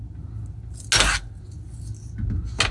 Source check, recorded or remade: recorded